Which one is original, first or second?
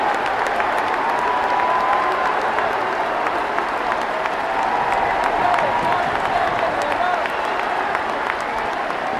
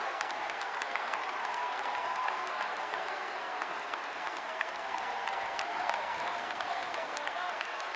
first